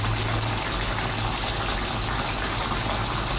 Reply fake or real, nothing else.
real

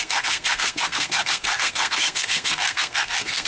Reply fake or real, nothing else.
fake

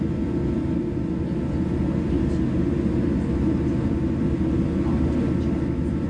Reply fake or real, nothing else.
real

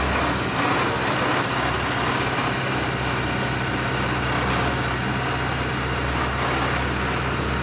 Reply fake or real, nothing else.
real